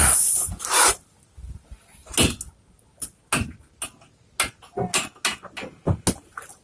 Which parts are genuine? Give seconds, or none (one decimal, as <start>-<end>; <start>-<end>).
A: 0.0-6.6